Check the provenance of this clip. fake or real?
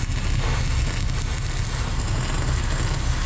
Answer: real